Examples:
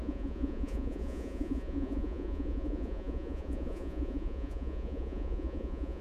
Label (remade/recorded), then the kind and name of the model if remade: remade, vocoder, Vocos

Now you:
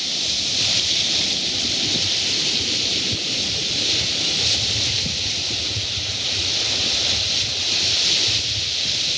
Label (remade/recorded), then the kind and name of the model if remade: recorded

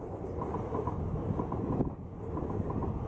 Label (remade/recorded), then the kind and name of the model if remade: recorded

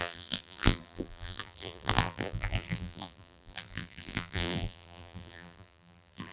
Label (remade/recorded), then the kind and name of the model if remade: remade, vocoder, BigVGAN v2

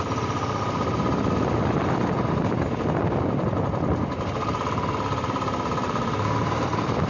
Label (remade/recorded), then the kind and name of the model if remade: recorded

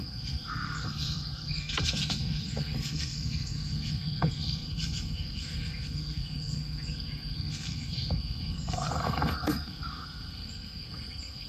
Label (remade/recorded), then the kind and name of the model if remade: remade, codec, SNAC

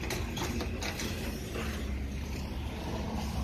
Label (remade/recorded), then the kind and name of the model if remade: recorded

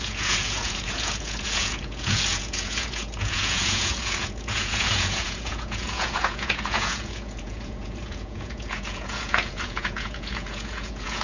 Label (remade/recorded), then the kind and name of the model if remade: remade, vocoder, Vocos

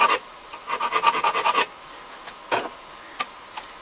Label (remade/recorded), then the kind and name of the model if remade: recorded